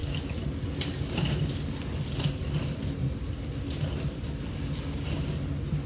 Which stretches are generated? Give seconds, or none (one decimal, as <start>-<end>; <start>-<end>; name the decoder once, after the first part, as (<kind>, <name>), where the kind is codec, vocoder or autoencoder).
none